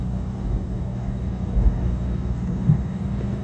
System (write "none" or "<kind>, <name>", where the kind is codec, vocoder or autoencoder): codec, DAC